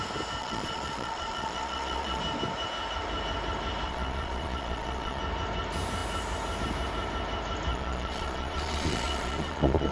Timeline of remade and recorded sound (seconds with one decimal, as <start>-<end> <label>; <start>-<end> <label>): 0.0-0.4 recorded; 0.4-2.2 remade; 2.2-3.9 recorded; 3.9-5.2 remade; 5.2-7.7 recorded; 7.7-9.9 remade